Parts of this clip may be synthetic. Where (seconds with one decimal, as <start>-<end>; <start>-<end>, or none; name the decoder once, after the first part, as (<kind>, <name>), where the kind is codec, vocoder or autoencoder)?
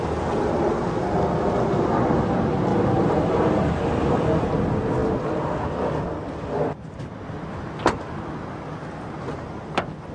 2.7-3.8 (vocoder, BigVGAN v2)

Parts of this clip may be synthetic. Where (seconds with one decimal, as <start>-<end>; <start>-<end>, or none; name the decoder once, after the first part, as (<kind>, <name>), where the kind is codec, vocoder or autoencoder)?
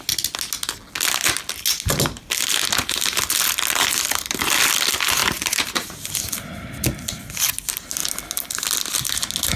5.2-6.2 (vocoder, BigVGAN v2)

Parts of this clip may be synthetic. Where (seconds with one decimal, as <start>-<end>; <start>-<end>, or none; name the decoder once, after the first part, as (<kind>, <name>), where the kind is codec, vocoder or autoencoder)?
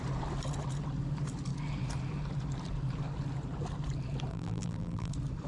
4.3-5.1 (vocoder, BigVGAN v2)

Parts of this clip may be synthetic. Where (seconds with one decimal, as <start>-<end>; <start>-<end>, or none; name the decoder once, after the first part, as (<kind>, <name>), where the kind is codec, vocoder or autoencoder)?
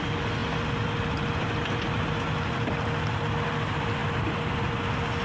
4.0-4.7 (vocoder, BigVGAN v2)